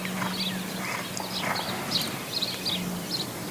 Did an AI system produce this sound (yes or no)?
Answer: no